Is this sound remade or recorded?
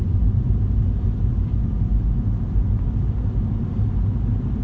recorded